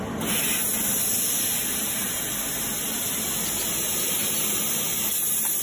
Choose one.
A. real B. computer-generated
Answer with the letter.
A